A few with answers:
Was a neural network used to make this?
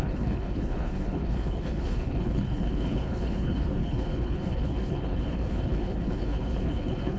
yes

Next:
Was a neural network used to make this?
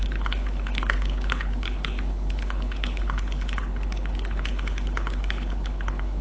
yes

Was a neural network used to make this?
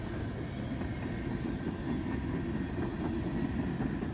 no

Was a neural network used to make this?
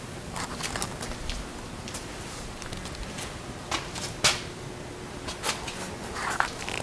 no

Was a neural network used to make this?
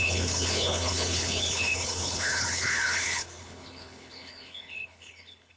yes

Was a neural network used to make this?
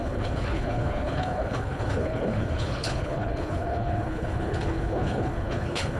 yes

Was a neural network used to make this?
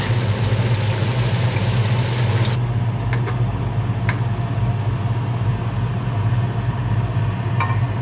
no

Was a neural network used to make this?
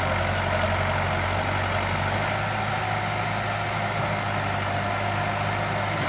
no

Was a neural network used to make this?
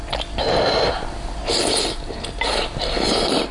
no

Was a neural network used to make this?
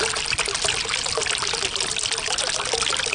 no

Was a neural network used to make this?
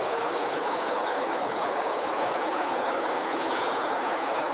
yes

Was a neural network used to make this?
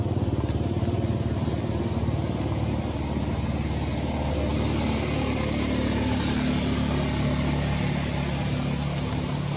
no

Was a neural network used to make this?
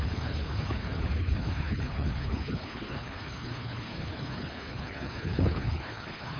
yes